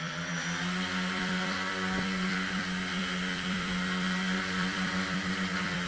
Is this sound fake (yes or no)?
yes